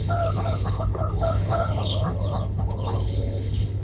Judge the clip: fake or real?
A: fake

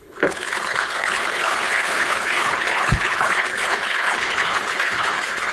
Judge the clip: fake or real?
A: fake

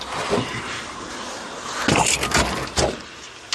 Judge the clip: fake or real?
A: real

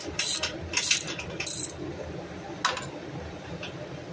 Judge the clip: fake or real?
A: real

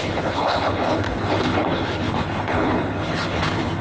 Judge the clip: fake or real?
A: fake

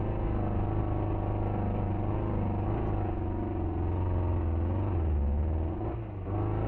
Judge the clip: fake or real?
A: real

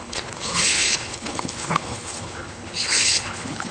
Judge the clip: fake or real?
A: fake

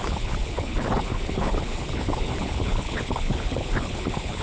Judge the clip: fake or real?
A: fake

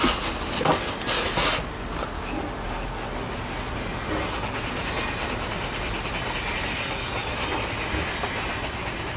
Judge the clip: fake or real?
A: real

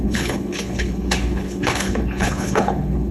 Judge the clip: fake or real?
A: fake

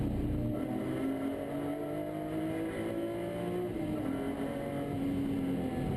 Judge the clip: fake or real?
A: real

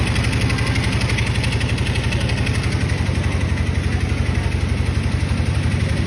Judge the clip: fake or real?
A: real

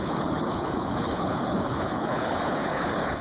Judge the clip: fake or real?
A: fake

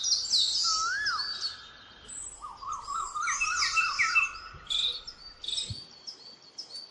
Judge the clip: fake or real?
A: real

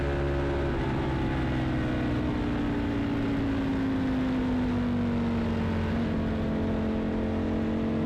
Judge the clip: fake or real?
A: real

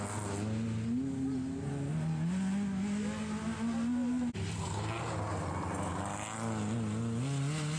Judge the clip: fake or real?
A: real